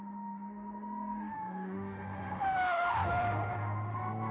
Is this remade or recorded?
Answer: remade